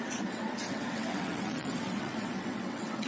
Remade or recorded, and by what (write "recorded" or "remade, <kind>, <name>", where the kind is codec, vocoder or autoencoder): remade, vocoder, WaveNeXt